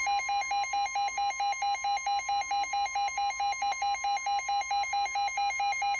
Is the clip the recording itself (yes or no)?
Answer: yes